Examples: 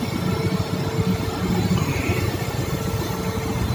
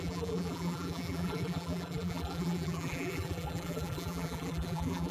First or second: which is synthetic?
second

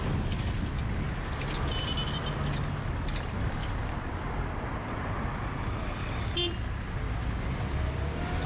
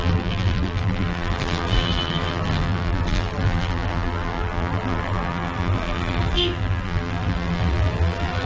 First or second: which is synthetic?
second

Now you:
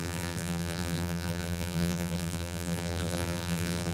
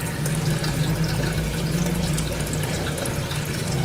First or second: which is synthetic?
first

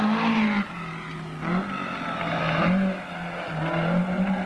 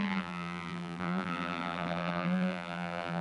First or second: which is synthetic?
second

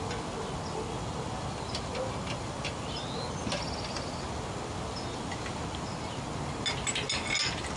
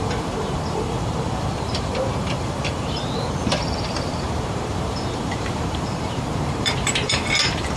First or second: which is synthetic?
second